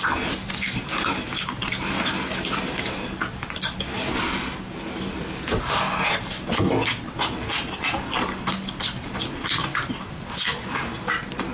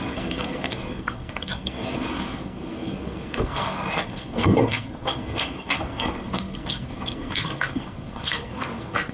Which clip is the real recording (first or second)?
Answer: first